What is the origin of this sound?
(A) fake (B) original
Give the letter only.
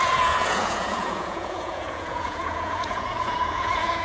A